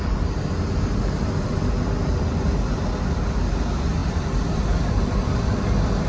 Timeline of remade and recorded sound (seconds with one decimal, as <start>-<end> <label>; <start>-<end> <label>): 0.0-6.1 recorded